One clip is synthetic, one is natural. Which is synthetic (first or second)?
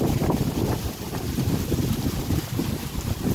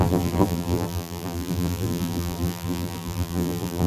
second